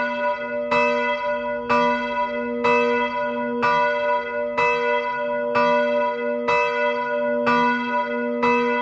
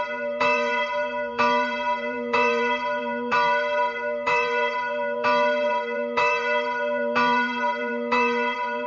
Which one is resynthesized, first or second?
second